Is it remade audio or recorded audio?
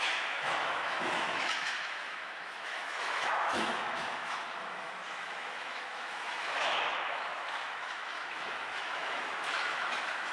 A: remade